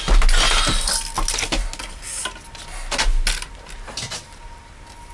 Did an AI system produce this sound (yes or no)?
no